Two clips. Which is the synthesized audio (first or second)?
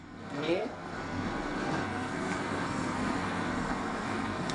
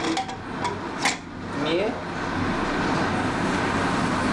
first